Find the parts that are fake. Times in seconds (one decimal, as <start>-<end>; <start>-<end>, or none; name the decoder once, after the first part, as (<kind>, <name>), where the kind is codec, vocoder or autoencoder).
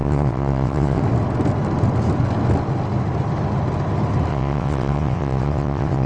0.0-1.0 (vocoder, WaveNeXt); 4.3-6.1